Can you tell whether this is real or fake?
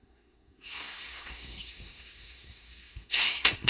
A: fake